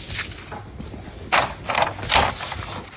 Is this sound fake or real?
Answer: real